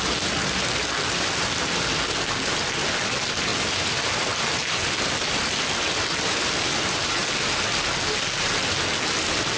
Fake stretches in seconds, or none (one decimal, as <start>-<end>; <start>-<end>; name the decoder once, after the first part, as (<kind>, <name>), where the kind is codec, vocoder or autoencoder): none